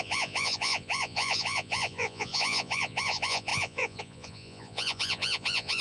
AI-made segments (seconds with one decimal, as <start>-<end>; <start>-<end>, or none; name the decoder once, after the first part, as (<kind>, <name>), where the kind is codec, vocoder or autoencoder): 0.0-5.8 (vocoder, Vocos)